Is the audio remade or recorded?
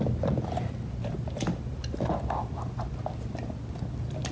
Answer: recorded